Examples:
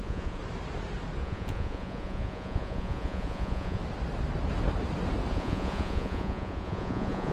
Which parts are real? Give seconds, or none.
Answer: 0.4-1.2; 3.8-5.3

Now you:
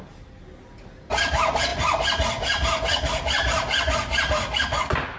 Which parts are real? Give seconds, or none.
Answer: 0.0-5.2

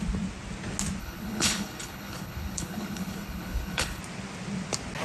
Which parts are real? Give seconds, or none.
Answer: 0.0-1.0; 4.0-5.0

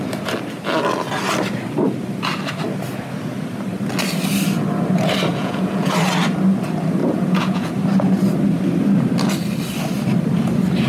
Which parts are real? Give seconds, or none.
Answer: 0.0-5.3; 5.9-7.0; 7.7-10.9

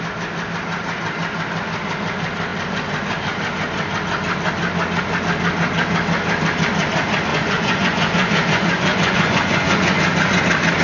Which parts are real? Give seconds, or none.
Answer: 0.0-7.3; 10.4-10.8

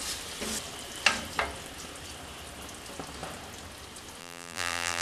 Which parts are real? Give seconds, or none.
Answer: 0.0-4.2

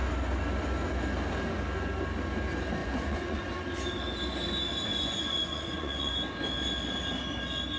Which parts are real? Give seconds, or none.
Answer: 0.0-2.8; 3.5-4.9; 6.1-7.8

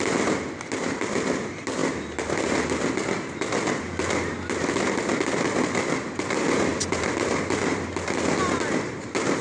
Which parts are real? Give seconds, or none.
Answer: 0.0-6.7; 7.8-9.4